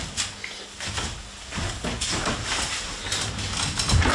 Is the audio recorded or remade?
recorded